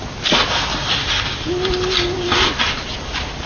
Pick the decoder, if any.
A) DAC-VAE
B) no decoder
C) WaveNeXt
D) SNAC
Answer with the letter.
B